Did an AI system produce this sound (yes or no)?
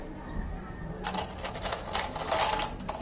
no